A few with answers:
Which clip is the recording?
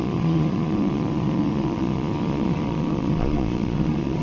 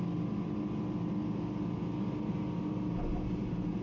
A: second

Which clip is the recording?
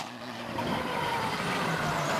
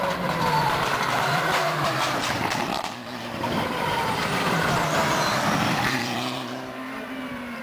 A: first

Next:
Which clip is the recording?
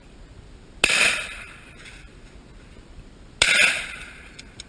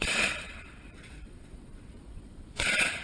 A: first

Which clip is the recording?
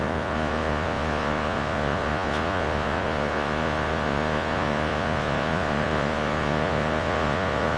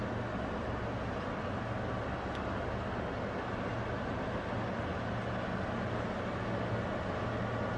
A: second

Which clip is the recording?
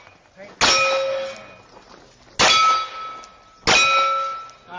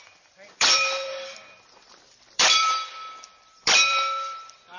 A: first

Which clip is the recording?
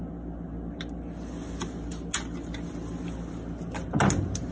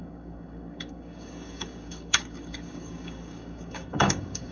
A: first